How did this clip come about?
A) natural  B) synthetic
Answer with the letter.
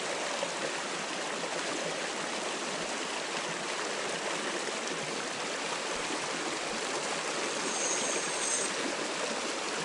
A